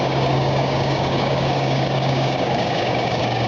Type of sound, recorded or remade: remade